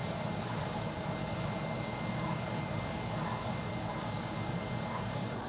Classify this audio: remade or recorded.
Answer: remade